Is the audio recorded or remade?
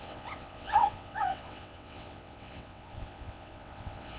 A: remade